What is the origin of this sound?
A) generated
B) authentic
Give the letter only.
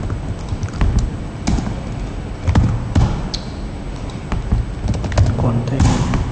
B